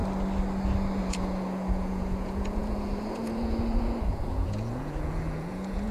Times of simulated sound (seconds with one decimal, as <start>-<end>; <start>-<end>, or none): 1.0-5.9